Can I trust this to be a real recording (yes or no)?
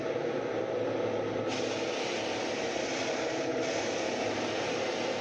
yes